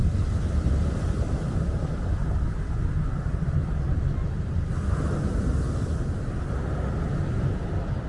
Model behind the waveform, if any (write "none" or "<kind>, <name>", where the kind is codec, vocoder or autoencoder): none